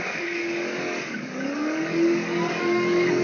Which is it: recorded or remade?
remade